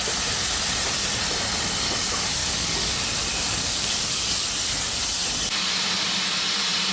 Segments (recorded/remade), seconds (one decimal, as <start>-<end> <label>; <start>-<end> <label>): 0.0-2.4 recorded; 2.4-2.9 remade; 2.9-3.3 recorded; 3.3-4.2 remade; 4.2-6.9 recorded